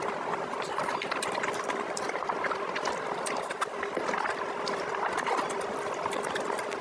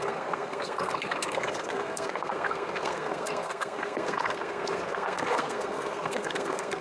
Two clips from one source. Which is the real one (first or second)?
first